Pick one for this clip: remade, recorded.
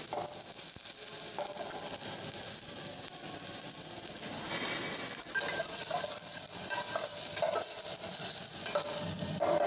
recorded